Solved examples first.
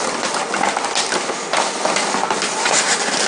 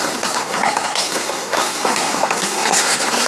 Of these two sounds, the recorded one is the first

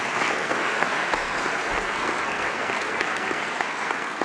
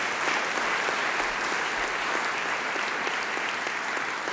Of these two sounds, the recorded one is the second